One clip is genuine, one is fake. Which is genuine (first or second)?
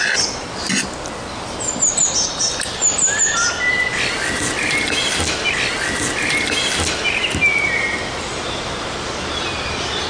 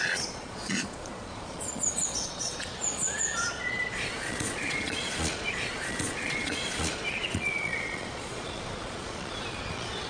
first